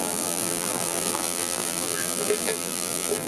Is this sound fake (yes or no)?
yes